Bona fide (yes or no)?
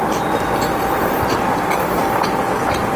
yes